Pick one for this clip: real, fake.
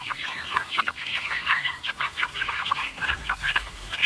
fake